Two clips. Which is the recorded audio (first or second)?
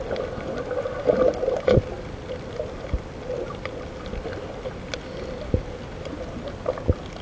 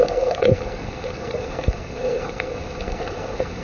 first